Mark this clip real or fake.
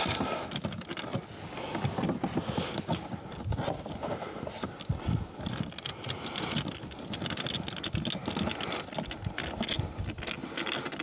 real